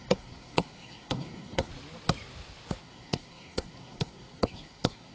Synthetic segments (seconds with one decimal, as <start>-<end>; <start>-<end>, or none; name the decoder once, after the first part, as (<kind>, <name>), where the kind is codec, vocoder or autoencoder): 0.0-1.7 (codec, SNAC); 2.8-5.1